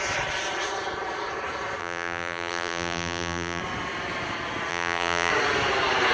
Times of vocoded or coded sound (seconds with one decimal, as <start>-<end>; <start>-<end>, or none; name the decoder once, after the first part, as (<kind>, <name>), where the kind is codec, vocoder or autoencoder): 1.8-3.6 (vocoder, BigVGAN v2); 4.7-5.3